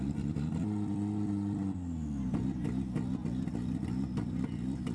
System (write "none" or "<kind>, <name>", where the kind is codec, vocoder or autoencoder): none